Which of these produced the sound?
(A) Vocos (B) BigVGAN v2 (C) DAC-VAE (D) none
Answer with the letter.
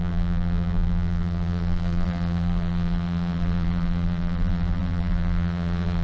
B